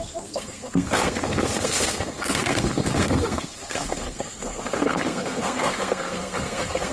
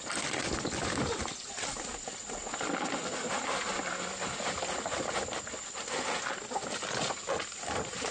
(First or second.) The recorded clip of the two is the second